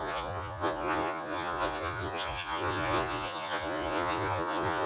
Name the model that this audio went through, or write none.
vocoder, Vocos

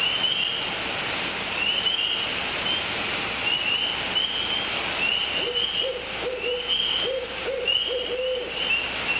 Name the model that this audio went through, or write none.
none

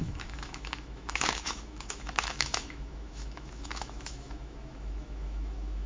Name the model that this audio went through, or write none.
autoencoder, DAC-VAE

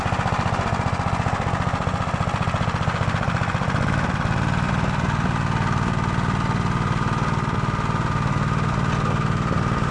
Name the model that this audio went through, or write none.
none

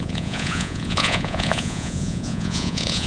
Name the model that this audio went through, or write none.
vocoder, Vocos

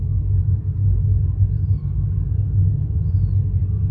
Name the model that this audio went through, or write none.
none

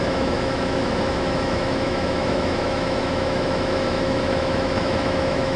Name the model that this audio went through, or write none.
autoencoder, DAC-VAE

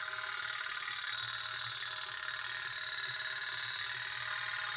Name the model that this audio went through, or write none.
none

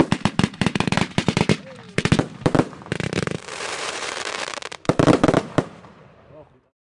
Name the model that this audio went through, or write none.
vocoder, BigVGAN v2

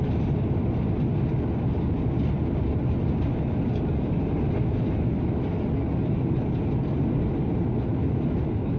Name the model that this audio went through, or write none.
none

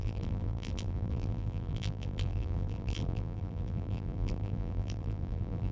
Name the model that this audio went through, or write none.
vocoder, BigVGAN v2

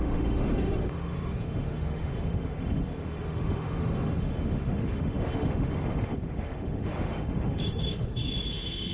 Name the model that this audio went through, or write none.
autoencoder, DAC-VAE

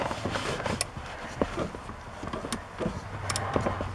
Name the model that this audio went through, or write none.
none